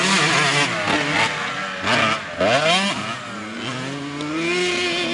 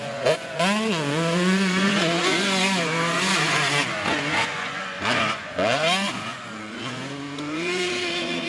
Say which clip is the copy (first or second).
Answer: second